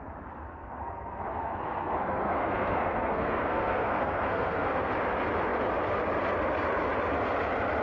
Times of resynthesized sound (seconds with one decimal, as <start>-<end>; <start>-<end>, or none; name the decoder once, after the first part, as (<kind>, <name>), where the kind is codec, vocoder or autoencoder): 0.4-4.9 (codec, SNAC)